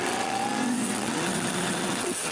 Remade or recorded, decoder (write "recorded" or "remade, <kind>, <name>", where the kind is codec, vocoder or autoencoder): remade, vocoder, WaveNeXt